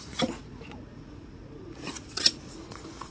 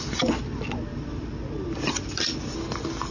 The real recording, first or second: second